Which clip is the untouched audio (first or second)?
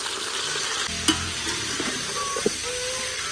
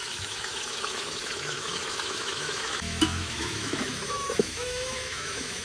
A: first